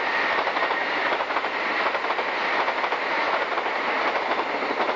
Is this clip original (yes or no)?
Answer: yes